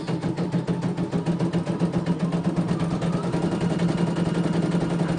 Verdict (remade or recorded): recorded